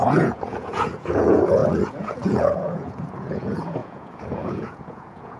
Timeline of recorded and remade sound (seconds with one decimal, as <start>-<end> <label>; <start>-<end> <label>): 0.0-5.4 remade

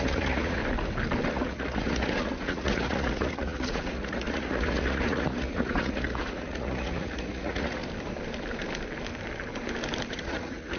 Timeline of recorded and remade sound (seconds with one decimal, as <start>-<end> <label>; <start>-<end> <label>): 0.0-0.6 remade; 0.6-1.3 recorded; 1.3-7.8 remade; 7.8-10.1 recorded; 10.1-10.8 remade

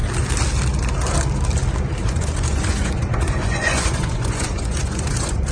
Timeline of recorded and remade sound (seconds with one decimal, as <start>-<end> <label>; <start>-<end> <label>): 0.0-2.0 recorded; 2.0-5.5 remade

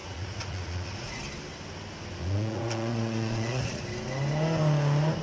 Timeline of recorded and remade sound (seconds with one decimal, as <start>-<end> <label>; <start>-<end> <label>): 0.0-1.2 remade; 1.2-2.2 recorded; 2.2-3.8 remade; 3.8-5.2 recorded

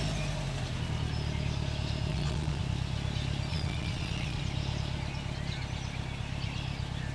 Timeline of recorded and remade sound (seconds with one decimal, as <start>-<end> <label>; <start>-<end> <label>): 0.0-2.1 recorded; 2.1-2.6 remade; 2.6-3.5 recorded; 3.5-4.4 remade; 4.4-7.1 recorded